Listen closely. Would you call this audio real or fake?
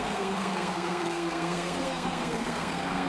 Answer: fake